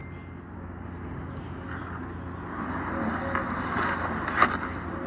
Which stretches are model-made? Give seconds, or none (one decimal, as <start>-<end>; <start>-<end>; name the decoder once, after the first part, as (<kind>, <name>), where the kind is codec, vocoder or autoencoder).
none